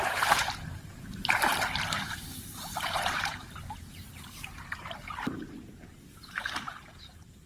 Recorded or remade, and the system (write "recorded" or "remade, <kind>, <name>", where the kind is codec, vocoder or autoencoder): remade, vocoder, BigVGAN v2